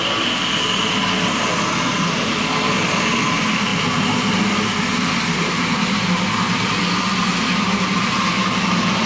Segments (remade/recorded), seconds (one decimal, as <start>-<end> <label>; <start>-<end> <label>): 0.0-9.1 recorded